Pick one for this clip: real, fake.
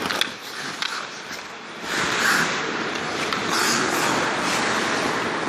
real